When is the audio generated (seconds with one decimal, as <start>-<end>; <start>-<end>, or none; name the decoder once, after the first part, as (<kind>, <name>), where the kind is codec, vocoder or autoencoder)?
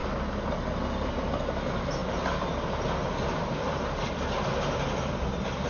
none